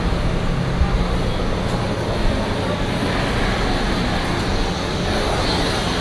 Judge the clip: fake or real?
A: real